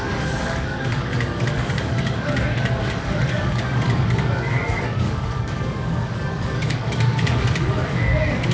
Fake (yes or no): yes